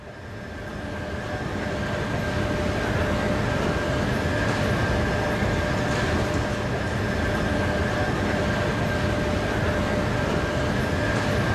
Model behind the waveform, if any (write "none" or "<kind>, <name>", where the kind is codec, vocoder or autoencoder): none